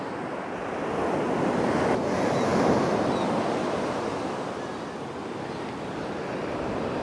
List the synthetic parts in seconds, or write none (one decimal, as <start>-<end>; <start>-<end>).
none